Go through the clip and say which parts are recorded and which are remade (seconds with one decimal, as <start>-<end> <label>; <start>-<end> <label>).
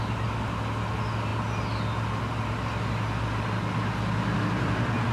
0.0-5.1 recorded